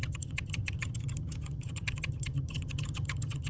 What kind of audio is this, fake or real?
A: fake